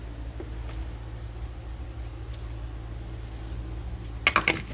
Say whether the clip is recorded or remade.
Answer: recorded